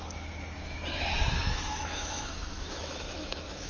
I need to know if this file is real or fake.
fake